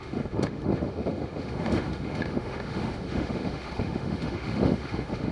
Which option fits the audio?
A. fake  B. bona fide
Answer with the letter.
A